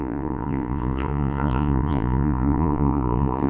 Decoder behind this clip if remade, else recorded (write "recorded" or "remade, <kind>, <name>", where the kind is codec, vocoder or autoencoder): remade, vocoder, Vocos